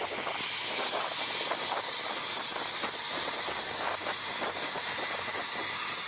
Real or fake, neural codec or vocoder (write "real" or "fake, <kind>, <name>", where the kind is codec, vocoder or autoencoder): real